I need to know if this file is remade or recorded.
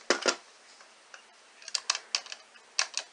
recorded